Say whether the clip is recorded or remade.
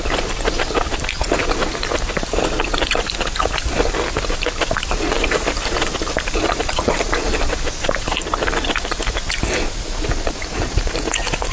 recorded